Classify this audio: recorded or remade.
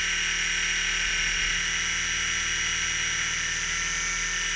recorded